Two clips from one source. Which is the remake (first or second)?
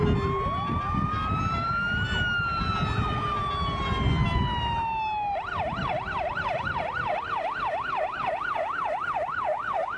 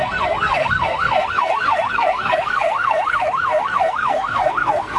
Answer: second